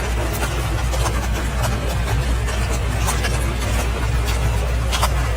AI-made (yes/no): no